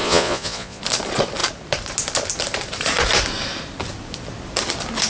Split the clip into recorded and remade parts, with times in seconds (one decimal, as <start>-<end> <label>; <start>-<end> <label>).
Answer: 0.0-0.8 remade; 0.8-5.1 recorded